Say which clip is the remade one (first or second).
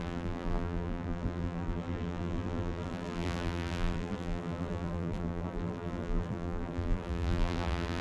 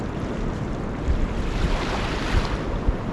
first